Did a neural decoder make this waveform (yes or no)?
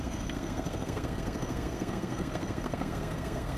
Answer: yes